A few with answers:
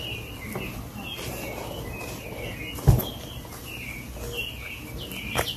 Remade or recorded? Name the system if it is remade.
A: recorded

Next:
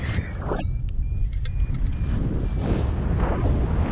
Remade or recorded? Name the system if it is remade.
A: recorded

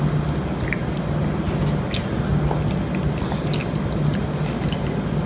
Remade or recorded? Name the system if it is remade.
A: recorded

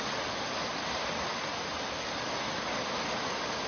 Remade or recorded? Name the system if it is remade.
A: recorded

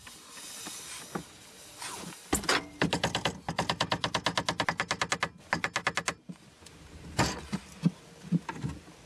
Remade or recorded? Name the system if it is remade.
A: recorded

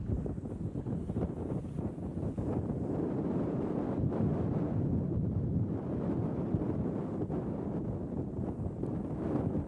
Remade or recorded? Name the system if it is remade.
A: recorded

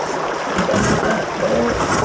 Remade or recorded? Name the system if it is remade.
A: recorded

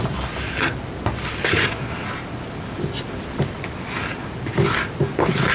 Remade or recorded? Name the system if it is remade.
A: recorded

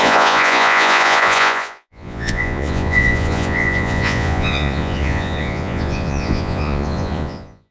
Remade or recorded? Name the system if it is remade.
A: remade, vocoder, Vocos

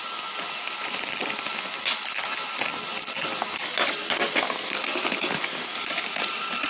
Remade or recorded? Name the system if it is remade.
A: recorded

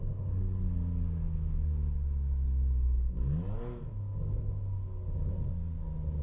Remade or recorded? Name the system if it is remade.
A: recorded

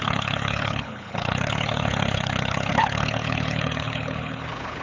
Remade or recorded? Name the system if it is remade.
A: remade, codec, HILCodec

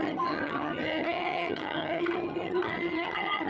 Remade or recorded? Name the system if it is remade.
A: remade, vocoder, HiFi-GAN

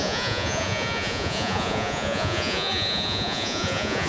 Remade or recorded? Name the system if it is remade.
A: remade, vocoder, Vocos